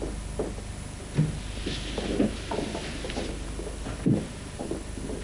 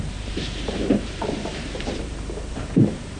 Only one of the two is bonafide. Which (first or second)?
first